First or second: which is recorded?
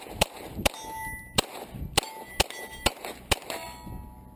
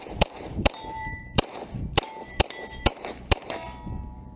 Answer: first